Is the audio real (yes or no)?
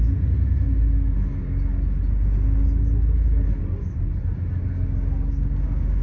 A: yes